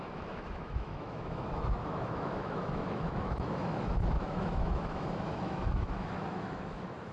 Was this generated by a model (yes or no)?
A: yes